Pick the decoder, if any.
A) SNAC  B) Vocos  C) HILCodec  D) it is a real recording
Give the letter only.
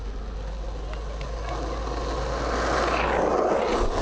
D